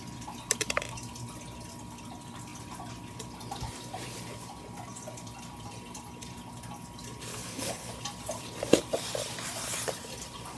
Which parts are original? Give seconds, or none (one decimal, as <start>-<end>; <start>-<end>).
0.0-7.3; 7.9-10.6